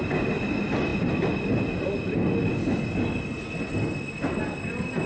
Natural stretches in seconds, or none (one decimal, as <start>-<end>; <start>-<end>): 0.0-5.1